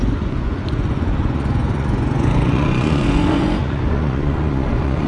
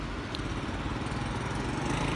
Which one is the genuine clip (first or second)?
second